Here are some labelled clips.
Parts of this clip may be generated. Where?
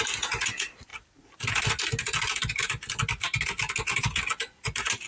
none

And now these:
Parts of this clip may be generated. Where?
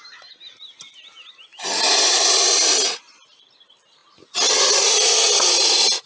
none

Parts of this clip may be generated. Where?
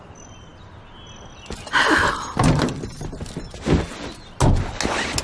none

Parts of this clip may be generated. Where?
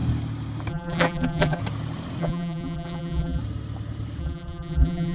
0.7-1.6 (vocoder, BigVGAN v2); 2.2-3.4; 4.2-5.1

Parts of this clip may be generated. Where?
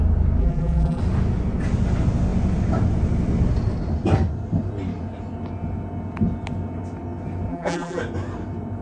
0.4-1.0 (vocoder, BigVGAN v2); 7.5-8.0